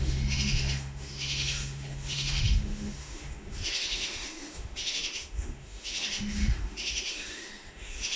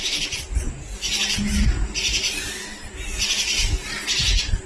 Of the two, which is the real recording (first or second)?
second